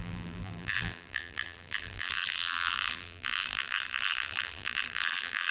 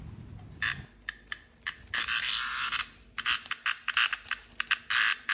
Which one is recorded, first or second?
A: second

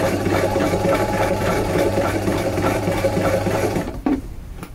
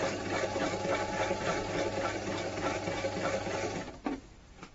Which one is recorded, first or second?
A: second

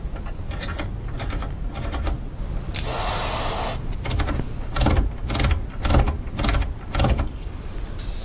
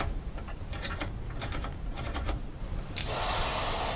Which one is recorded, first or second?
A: first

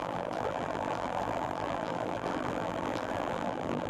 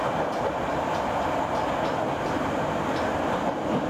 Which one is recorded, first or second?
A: second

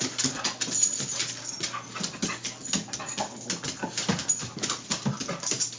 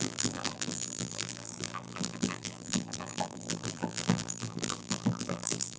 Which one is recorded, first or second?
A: first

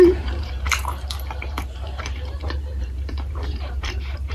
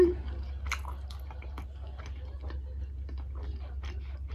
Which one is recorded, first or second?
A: second